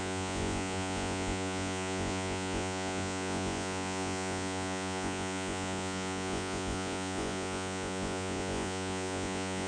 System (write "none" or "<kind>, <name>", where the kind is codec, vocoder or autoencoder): vocoder, Vocos